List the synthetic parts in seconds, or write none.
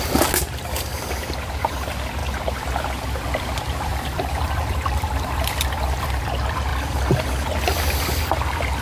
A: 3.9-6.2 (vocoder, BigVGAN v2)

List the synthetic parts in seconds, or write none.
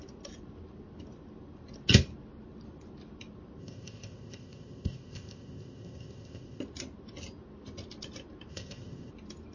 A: 3.6-6.6 (codec, ZipCodec); 8.5-9.1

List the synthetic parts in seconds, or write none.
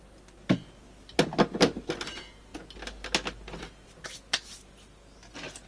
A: none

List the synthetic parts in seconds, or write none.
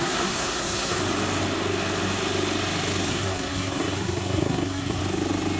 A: 0.0-1.0 (codec, SNAC); 3.1-5.0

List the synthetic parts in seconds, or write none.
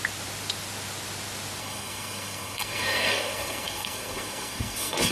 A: 1.6-5.1 (codec, SNAC)